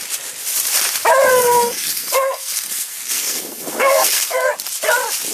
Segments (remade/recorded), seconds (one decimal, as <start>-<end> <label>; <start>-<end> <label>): 0.0-1.3 recorded; 1.3-4.5 remade; 4.5-5.3 recorded